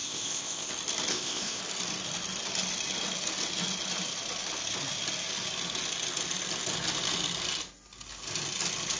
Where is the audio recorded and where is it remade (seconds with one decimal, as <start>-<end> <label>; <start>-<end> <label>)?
0.0-0.7 remade; 0.7-1.1 recorded; 1.1-1.6 remade; 1.6-9.0 recorded

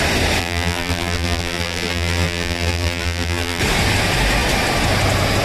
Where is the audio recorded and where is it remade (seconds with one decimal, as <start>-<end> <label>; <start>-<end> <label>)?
0.0-0.4 recorded; 0.4-3.6 remade; 3.6-5.4 recorded